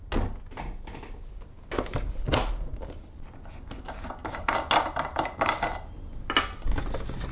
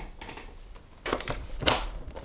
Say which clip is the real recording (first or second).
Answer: first